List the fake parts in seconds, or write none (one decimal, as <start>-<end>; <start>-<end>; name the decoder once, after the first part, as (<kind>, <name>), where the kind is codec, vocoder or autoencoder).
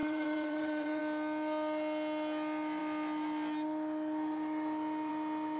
0.0-1.0 (vocoder, WaveNeXt)